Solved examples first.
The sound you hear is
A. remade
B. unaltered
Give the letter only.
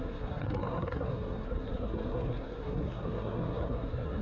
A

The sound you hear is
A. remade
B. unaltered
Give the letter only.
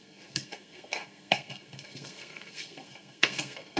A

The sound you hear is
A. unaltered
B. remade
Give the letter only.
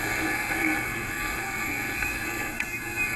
B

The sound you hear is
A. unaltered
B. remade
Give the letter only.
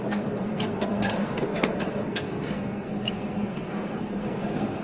B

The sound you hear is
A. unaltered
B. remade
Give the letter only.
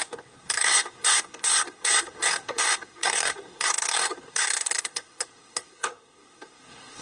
B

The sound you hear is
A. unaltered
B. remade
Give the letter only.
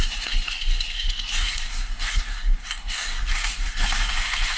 B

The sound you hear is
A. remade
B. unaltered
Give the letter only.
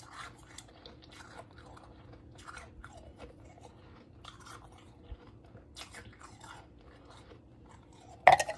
B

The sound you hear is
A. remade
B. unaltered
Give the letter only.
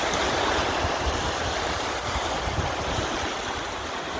B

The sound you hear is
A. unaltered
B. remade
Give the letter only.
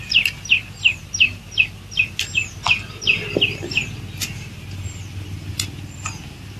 A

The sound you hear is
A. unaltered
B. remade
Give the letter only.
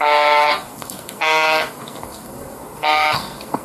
B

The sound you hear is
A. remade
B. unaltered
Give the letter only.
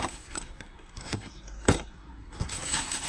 A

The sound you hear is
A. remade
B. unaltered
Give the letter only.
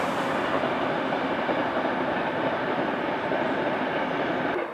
B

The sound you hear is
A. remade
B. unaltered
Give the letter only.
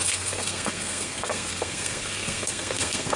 A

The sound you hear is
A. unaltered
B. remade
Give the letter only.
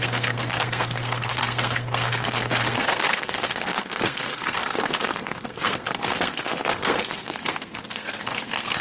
B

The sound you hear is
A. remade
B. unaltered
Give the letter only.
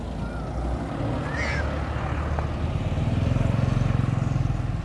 B